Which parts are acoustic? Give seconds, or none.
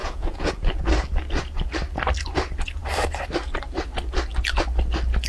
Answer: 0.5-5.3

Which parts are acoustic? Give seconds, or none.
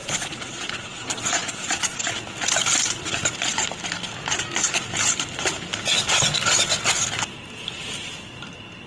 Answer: 2.1-8.9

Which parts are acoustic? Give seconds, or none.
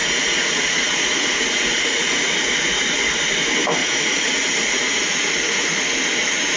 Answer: 3.2-3.8; 5.7-6.6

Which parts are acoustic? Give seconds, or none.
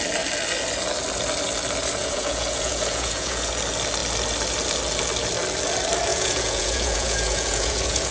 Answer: 0.0-2.0; 3.5-6.1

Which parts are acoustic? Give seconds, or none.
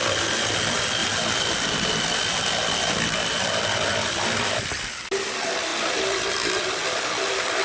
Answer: 0.0-7.6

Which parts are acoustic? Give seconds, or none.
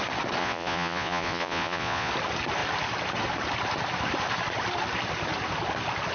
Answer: 0.0-0.4; 2.1-6.1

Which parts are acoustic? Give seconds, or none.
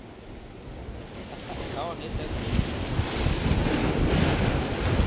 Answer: 0.0-5.1